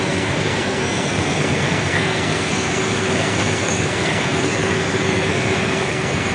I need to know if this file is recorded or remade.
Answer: remade